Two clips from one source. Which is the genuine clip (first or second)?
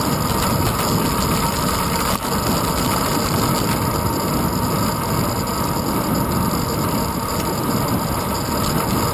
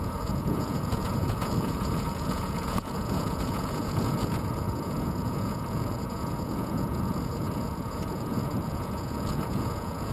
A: first